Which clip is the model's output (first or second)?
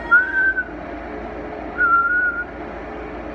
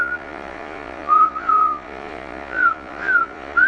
second